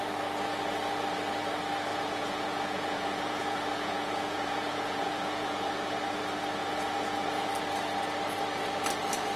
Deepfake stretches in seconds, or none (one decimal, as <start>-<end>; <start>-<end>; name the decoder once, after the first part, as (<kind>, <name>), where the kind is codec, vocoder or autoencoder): 1.9-5.7 (vocoder, Vocos); 6.6-7.5